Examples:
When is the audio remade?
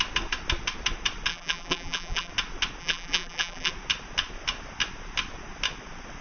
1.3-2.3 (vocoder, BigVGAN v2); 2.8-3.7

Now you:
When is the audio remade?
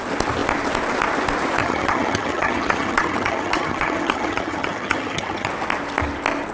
1.6-5.5 (vocoder, HiFi-GAN)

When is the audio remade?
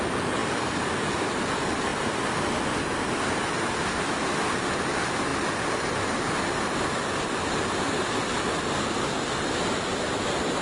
none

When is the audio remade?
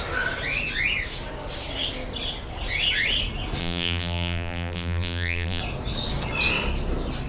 3.6-5.6 (vocoder, BigVGAN v2)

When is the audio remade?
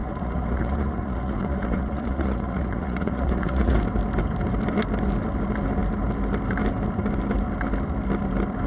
0.0-3.8 (vocoder, Vocos)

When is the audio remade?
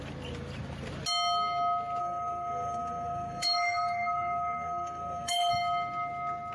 2.0-5.5 (codec, SNAC)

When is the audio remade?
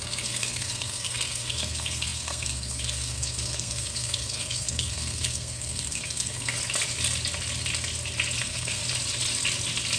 0.0-6.5 (codec, SNAC); 8.4-8.8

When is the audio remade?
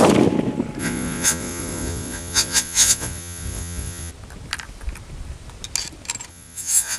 0.8-4.1 (vocoder, Vocos); 6.3-7.0